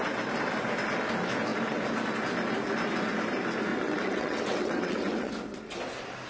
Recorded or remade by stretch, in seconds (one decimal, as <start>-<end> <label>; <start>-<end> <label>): 0.0-3.7 recorded; 3.7-5.3 remade; 5.3-6.3 recorded